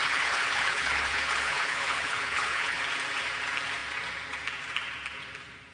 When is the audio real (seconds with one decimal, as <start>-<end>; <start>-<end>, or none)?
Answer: 2.8-5.7

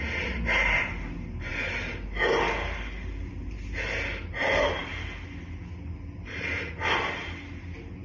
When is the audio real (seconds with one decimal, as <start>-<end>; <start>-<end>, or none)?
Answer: 0.0-8.0

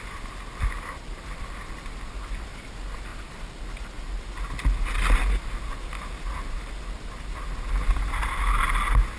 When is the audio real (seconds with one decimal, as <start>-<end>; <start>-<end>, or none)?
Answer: 0.0-9.2